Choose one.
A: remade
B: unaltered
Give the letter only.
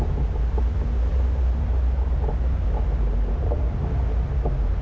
B